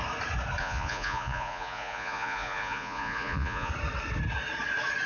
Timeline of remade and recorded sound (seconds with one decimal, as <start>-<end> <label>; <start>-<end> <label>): 0.0-0.6 recorded; 0.6-3.7 remade; 3.7-5.1 recorded